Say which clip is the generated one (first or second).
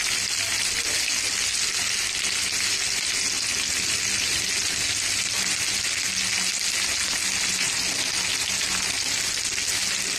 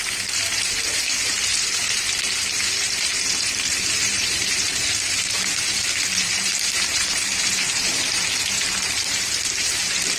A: second